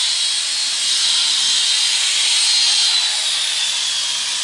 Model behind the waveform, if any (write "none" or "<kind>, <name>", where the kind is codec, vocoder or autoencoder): none